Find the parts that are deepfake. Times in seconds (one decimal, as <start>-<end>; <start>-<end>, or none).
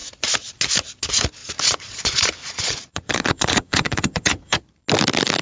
1.4-4.6